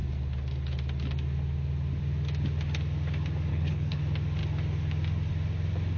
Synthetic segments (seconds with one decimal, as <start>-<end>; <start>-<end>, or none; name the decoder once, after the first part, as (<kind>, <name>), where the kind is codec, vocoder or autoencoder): 3.5-4.0 (codec, HILCodec)

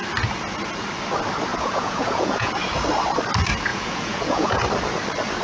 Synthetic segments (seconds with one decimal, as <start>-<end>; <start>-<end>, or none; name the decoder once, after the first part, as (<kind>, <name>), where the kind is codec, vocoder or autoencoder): 1.5-2.5 (vocoder, Vocos); 3.7-4.6

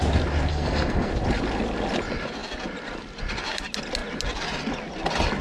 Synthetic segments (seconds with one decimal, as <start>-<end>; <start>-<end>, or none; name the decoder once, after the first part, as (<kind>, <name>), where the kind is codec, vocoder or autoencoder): 0.5-1.1 (codec, SNAC)

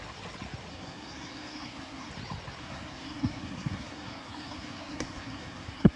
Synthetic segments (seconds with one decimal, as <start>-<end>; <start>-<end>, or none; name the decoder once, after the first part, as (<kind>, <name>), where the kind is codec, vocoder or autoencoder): 0.7-2.1 (codec, SNAC); 2.6-6.0

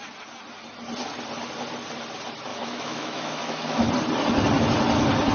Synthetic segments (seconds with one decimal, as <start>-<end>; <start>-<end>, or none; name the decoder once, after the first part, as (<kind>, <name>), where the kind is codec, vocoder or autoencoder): 2.5-3.9 (autoencoder, DAC-VAE)

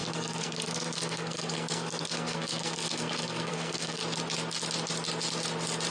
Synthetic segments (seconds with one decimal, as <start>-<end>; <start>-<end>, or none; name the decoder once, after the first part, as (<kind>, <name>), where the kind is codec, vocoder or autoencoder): 0.0-4.0 (codec, SNAC)

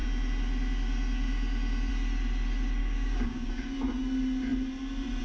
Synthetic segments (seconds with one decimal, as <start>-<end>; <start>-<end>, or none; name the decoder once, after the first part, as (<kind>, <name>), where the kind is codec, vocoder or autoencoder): 2.8-3.5 (codec, DAC)